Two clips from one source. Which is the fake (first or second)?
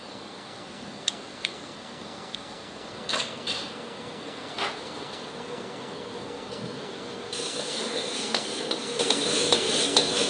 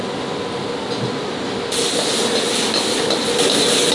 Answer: first